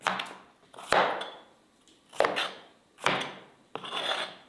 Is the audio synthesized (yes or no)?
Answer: no